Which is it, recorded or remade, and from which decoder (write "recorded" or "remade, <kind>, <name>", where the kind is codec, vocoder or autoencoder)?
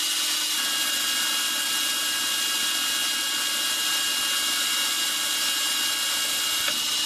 recorded